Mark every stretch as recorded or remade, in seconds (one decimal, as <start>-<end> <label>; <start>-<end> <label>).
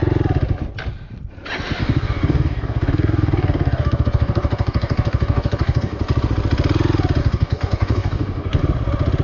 0.0-1.8 recorded; 1.8-6.0 remade; 6.0-7.2 recorded; 7.2-8.6 remade; 8.6-9.2 recorded